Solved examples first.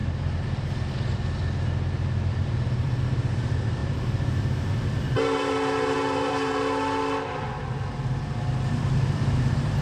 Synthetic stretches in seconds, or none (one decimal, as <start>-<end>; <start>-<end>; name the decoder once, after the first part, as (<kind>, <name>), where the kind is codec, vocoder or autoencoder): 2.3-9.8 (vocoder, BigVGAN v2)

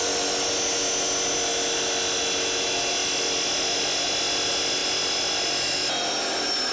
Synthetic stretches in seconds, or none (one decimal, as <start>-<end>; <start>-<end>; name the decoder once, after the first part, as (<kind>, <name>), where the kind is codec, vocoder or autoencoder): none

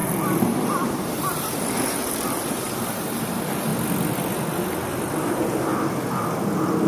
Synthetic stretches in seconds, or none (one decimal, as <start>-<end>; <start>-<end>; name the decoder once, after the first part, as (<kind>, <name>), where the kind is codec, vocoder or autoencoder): 0.0-3.7 (vocoder, BigVGAN v2); 5.2-5.7